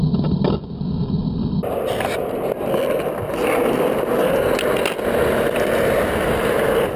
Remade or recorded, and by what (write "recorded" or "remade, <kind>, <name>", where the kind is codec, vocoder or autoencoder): recorded